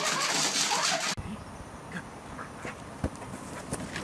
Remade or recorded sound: recorded